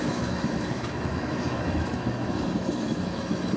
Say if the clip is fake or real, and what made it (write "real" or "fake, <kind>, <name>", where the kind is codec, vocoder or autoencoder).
fake, autoencoder, DAC-VAE